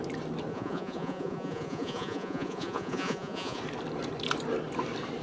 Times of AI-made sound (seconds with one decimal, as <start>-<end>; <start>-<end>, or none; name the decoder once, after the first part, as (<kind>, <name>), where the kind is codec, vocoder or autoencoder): 0.5-3.6 (vocoder, Vocos)